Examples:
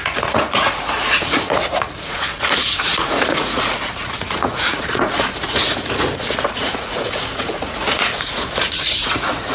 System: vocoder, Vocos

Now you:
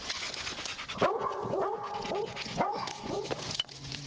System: vocoder, Vocos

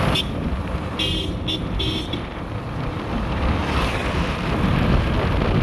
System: none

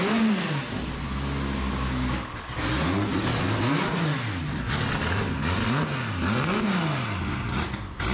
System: none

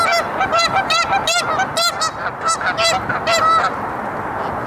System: none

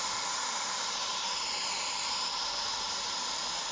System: none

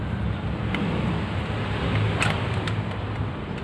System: none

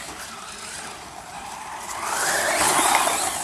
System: none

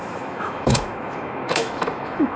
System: autoencoder, DAC-VAE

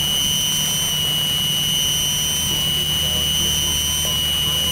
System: none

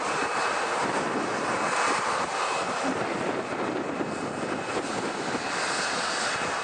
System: none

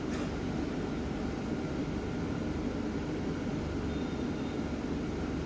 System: none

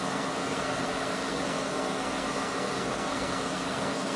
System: codec, SNAC